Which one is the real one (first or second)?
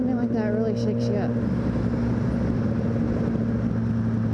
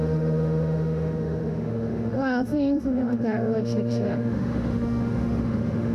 first